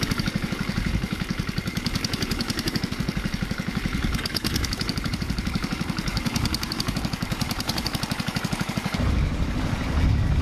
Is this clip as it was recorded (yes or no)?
no